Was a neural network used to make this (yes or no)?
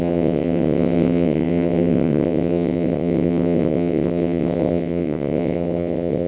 yes